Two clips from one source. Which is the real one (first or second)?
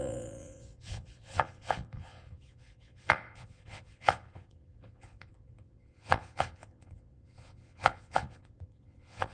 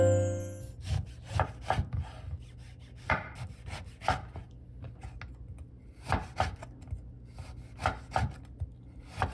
second